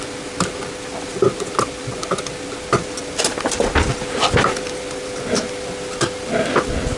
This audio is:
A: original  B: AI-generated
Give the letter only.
A